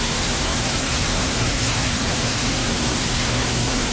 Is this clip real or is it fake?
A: fake